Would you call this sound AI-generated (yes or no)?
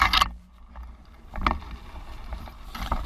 no